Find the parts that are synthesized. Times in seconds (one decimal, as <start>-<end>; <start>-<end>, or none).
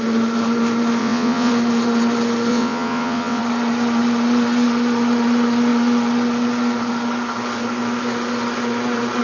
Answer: 1.0-1.5; 2.5-3.4